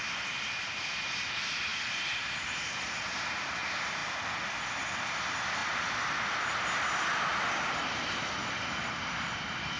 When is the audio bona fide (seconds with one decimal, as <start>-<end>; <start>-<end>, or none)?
0.0-9.8